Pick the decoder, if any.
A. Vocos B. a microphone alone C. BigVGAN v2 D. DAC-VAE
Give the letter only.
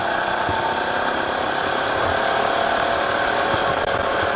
B